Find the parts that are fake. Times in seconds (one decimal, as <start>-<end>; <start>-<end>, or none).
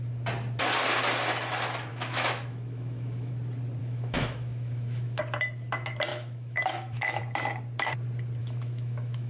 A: 1.9-3.3; 3.8-5.2; 6.1-7.2; 8.4-9.3